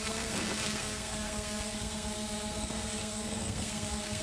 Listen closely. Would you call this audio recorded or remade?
remade